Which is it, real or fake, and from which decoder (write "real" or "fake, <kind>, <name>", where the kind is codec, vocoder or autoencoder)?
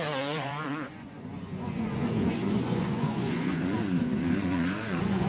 fake, vocoder, Vocos